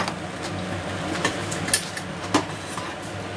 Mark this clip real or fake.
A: real